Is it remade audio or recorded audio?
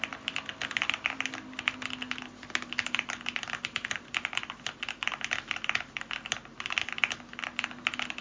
recorded